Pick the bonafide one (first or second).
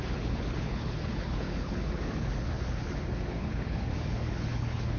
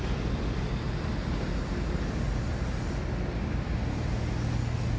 second